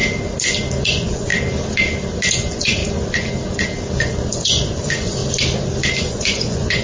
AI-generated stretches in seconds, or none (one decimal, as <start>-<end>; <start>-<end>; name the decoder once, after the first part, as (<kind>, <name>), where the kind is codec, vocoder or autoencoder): 0.8-1.3 (vocoder, Vocos); 2.3-2.8; 4.0-5.2; 6.0-6.8